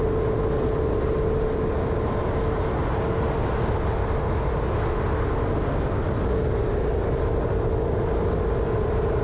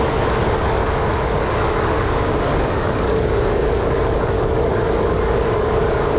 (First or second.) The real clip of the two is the first